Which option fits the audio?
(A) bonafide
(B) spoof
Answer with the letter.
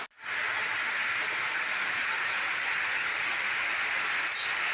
A